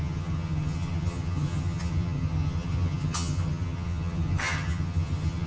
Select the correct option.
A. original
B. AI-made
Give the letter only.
B